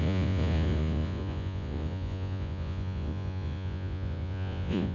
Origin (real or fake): fake